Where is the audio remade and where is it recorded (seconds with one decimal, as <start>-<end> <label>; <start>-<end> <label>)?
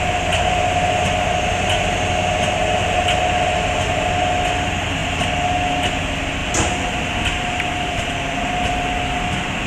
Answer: 0.0-5.0 recorded; 5.0-5.5 remade; 5.5-6.4 recorded; 6.4-8.9 remade; 8.9-9.7 recorded